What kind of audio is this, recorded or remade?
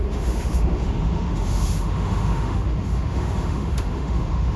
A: remade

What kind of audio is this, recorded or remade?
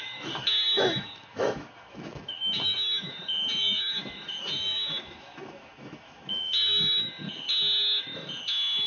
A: remade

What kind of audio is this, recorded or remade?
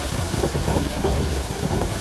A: remade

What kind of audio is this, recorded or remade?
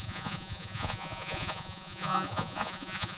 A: remade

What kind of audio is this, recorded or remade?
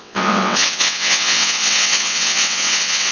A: remade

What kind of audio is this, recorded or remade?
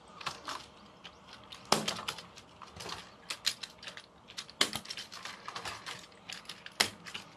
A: recorded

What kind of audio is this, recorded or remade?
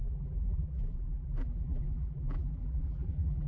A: remade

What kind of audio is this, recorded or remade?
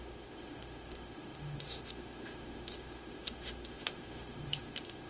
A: remade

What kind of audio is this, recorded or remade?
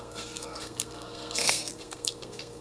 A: remade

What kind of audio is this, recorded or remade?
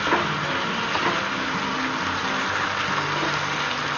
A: recorded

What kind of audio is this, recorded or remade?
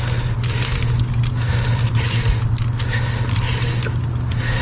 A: recorded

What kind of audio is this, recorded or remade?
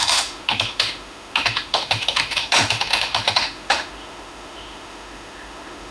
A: remade